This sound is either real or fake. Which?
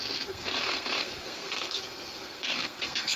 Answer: fake